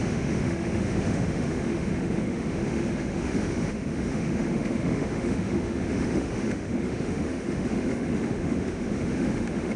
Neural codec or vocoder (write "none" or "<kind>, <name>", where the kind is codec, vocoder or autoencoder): autoencoder, DAC-VAE